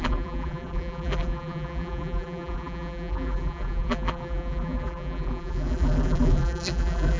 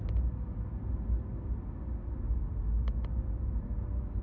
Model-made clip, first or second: first